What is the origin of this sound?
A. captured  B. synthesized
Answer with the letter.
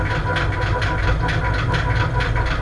A